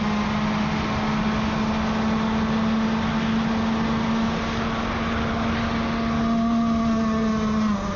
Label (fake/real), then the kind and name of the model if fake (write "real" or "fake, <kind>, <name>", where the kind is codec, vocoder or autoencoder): real